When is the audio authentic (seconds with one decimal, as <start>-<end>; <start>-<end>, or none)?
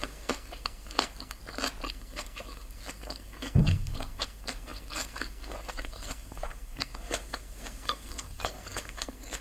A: 1.4-1.9